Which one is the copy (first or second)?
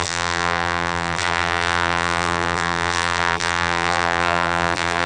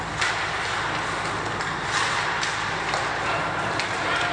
first